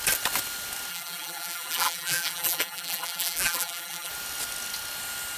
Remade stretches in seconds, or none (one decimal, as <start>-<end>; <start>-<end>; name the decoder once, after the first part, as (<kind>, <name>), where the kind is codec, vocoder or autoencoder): 0.9-4.1 (vocoder, BigVGAN v2)